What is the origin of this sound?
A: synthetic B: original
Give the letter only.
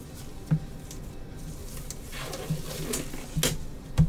B